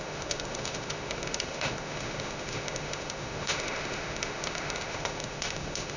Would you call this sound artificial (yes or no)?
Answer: yes